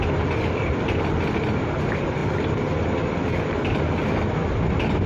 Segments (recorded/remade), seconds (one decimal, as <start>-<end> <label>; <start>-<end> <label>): 0.0-5.1 recorded